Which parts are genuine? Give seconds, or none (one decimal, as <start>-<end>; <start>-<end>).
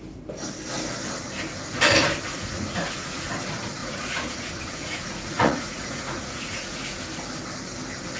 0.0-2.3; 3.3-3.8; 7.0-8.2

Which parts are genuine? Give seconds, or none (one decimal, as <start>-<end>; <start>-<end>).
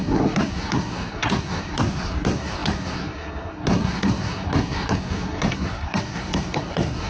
none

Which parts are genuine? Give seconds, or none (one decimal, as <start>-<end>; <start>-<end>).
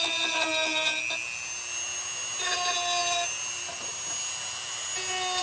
0.0-5.4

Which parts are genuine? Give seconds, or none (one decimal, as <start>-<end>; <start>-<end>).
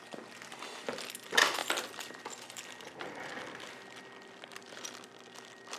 0.0-5.8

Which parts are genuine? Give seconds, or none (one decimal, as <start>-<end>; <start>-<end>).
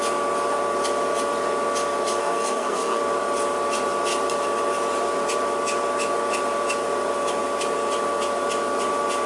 0.0-2.2; 3.0-9.3